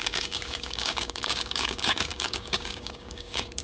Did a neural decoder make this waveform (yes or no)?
yes